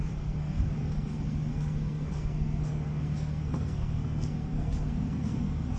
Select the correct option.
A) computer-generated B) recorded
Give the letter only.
A